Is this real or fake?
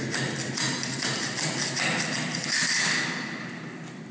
real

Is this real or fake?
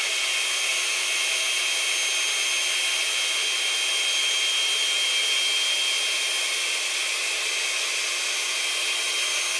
real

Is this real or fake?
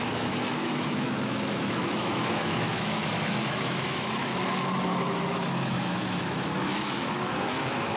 fake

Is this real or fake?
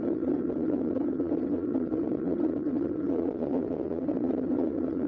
fake